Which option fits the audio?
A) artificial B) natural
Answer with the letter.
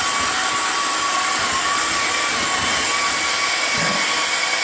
B